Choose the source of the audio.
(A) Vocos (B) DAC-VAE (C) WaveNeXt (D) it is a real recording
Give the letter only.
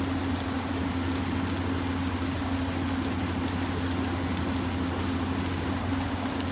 D